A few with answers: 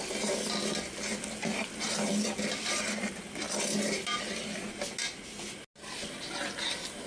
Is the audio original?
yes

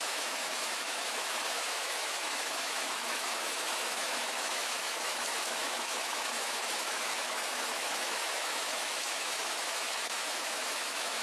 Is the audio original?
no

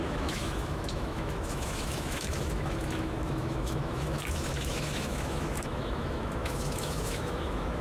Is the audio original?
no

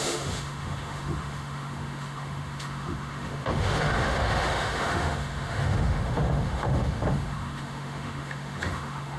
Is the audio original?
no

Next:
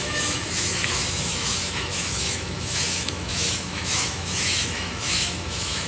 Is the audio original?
no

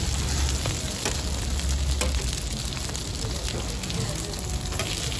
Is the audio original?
yes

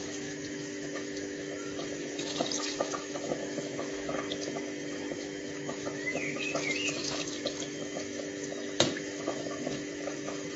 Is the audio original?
no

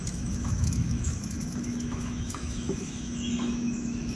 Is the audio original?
no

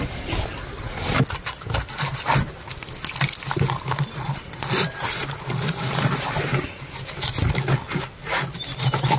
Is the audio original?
yes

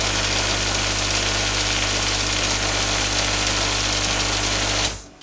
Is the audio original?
yes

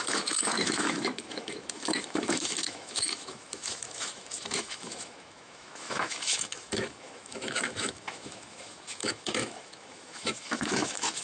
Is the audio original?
no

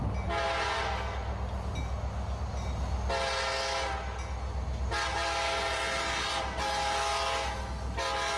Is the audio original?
yes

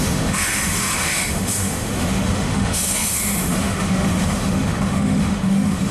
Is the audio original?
no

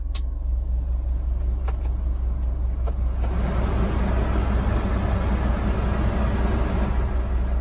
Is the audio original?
yes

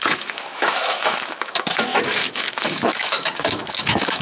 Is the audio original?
no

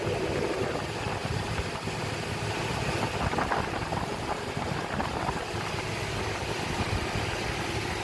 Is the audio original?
yes